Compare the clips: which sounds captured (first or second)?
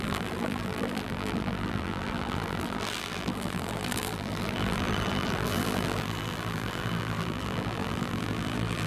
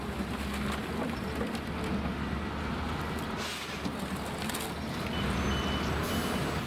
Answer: second